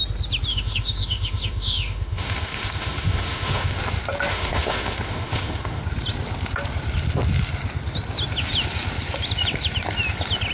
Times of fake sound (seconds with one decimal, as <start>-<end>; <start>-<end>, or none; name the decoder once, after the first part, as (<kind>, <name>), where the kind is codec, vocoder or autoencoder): 0.5-3.8 (autoencoder, DAC-VAE); 4.3-5.8